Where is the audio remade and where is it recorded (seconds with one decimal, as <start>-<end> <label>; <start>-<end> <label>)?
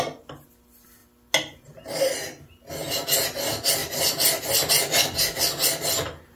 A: 0.0-6.4 recorded